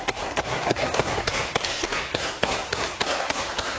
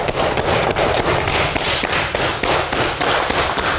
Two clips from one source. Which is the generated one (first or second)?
first